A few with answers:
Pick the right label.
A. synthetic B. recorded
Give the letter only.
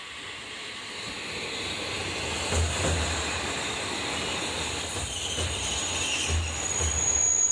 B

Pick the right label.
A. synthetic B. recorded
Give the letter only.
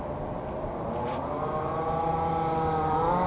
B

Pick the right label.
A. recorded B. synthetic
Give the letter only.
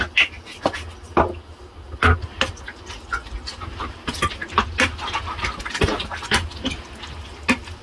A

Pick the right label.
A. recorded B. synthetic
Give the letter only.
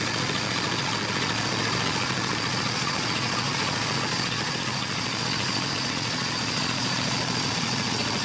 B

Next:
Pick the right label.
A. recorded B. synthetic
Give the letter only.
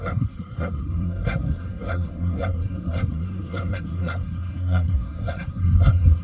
B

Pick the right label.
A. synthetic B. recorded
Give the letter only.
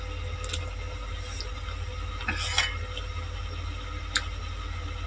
B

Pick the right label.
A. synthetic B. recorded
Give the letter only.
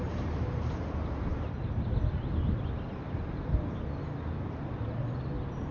B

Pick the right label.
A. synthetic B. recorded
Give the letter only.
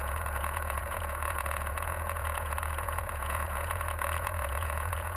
A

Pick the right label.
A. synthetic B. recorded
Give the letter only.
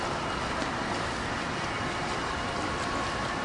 B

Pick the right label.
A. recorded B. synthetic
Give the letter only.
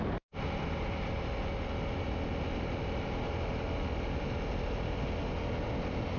A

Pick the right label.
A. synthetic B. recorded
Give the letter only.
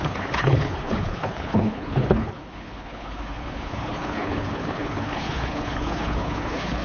A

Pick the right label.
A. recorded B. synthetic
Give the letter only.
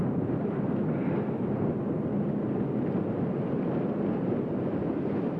A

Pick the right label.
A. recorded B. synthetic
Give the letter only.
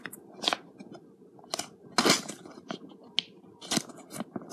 A